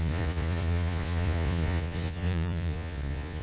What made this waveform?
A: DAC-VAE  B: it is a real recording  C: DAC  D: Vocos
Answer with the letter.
D